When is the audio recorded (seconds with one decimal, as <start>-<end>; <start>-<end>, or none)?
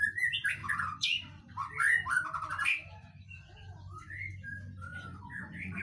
0.0-0.6; 1.4-4.9